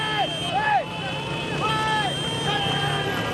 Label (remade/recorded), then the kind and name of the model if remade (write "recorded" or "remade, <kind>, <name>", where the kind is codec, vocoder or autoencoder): recorded